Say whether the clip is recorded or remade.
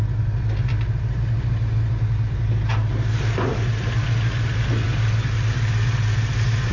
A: recorded